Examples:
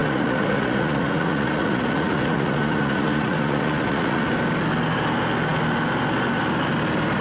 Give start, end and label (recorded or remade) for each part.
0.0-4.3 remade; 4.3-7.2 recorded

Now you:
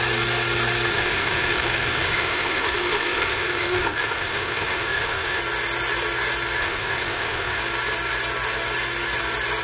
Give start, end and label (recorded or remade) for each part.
0.0-0.9 recorded; 0.9-5.4 remade; 5.4-6.6 recorded; 6.6-7.6 remade; 7.6-9.6 recorded

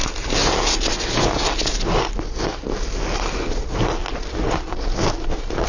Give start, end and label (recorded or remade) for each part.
0.0-5.7 recorded

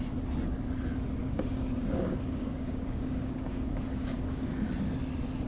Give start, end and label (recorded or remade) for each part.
0.0-1.2 recorded; 1.2-4.5 remade; 4.5-5.5 recorded